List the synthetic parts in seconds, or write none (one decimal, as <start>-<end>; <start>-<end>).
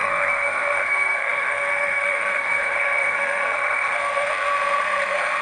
0.0-5.4